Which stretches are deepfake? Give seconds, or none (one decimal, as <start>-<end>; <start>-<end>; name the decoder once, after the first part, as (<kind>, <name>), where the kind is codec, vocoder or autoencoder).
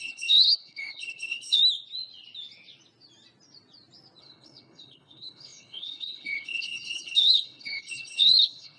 0.0-1.6 (codec, HILCodec); 4.2-8.8